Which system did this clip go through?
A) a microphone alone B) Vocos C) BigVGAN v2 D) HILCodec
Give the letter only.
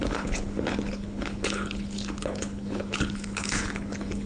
D